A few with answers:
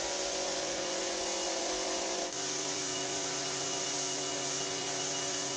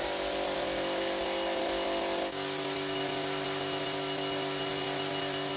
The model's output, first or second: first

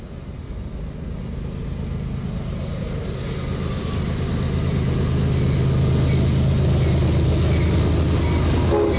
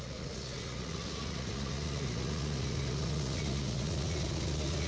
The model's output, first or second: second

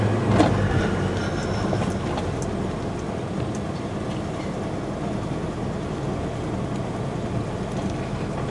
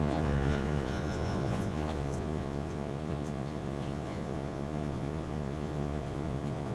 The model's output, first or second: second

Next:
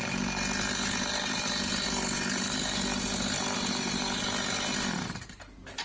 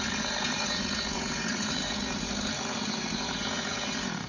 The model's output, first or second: second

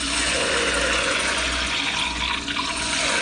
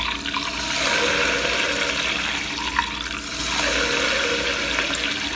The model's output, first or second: first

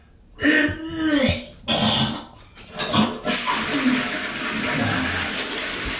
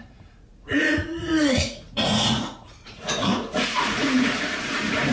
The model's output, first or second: second